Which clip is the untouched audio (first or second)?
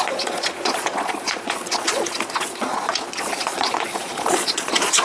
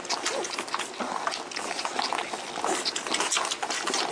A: second